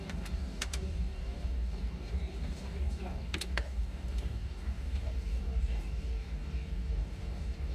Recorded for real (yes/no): no